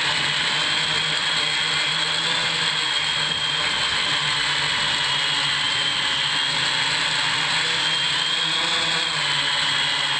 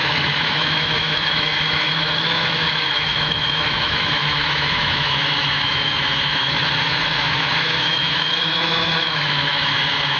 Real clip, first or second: first